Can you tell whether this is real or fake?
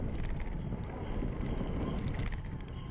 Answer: real